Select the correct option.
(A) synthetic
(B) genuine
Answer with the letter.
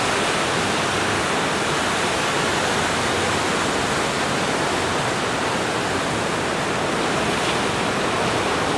B